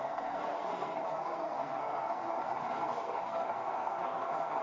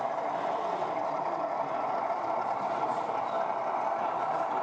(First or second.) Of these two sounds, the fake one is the first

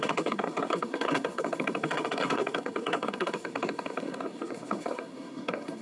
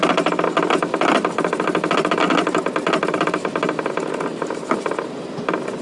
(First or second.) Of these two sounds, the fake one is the first